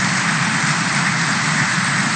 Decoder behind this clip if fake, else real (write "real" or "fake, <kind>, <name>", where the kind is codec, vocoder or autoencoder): real